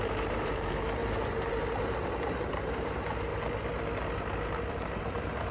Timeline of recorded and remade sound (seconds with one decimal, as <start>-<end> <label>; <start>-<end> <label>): 0.0-3.3 remade; 3.3-4.7 recorded; 4.7-5.5 remade